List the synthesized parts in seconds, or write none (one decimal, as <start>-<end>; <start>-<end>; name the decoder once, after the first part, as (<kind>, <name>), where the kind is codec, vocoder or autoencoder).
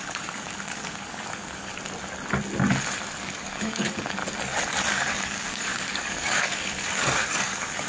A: 0.0-1.7 (codec, DAC); 3.2-4.2; 4.9-7.9